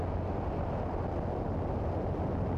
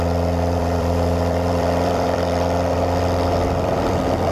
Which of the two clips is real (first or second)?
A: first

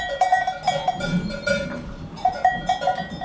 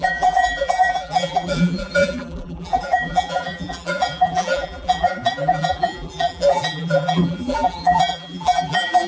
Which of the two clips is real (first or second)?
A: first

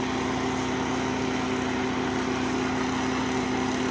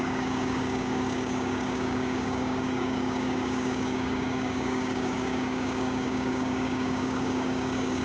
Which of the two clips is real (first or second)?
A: first